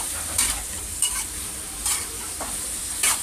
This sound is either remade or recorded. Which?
remade